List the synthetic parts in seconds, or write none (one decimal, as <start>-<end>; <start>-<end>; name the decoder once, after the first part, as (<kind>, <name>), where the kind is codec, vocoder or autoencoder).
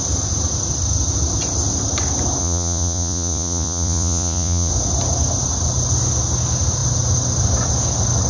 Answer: 2.4-4.7 (vocoder, Vocos)